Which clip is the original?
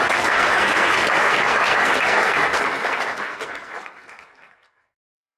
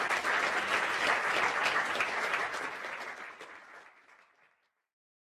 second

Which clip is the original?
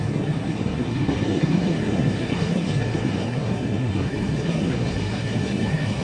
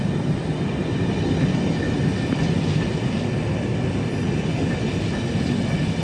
second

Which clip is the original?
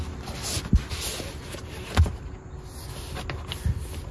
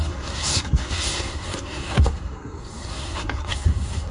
first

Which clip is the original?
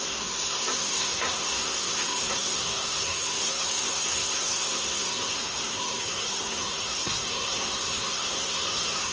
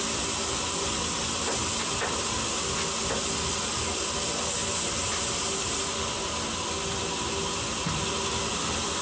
second